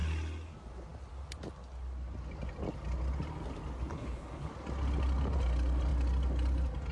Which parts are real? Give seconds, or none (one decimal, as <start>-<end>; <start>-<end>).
0.0-3.9; 4.5-6.9